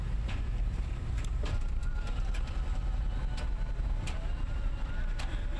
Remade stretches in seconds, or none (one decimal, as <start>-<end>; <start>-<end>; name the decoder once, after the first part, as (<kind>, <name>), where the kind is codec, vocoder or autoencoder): 0.0-1.8 (vocoder, BigVGAN v2); 3.8-5.6